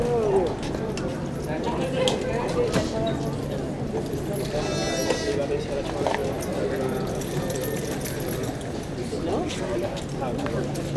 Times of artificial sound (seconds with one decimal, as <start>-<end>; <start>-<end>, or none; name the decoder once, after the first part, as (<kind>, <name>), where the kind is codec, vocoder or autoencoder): none